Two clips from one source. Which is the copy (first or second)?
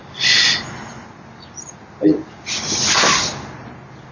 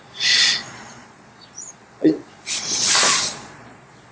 second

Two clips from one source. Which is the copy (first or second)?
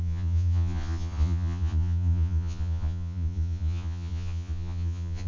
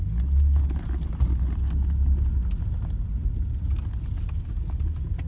first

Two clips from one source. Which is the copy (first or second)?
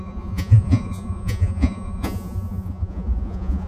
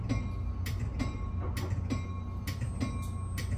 first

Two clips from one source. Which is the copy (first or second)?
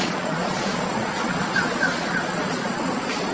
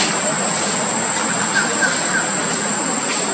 first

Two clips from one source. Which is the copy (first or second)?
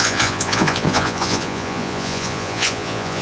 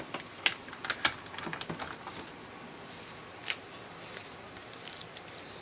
first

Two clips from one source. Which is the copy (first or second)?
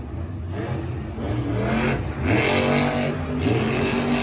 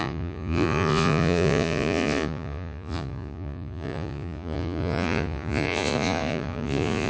second